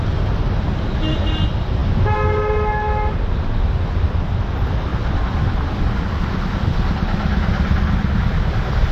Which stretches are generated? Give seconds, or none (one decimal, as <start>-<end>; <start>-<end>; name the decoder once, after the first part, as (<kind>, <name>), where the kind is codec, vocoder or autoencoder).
none